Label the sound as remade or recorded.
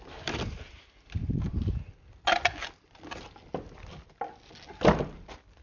recorded